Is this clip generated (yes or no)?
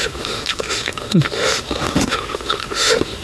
yes